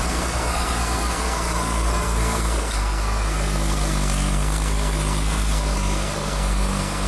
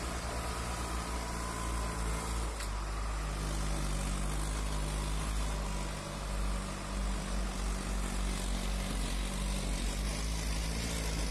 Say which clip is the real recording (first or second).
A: second